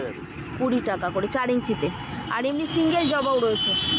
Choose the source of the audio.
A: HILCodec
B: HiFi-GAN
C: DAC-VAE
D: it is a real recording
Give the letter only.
D